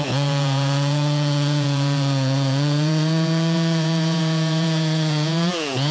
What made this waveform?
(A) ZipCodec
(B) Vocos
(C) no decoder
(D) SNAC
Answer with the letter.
B